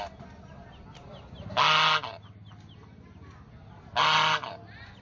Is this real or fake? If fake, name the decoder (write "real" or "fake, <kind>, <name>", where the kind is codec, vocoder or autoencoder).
real